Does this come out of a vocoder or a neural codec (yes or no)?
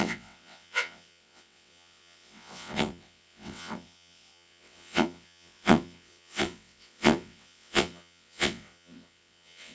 yes